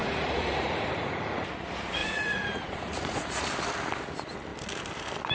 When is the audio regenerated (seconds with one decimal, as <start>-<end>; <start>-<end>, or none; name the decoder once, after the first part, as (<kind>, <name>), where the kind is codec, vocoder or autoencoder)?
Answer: 0.0-1.5 (vocoder, Vocos); 2.0-3.4